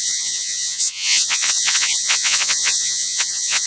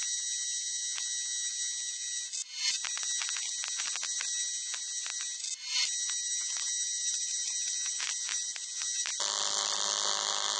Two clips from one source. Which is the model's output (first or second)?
first